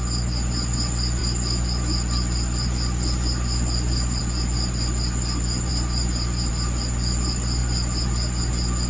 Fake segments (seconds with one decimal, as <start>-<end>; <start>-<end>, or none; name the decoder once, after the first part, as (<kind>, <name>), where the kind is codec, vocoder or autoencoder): none